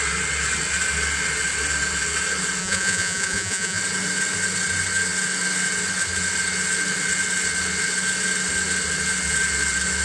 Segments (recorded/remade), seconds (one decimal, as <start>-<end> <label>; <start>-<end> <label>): 0.0-2.6 recorded; 2.6-3.8 remade; 3.8-10.0 recorded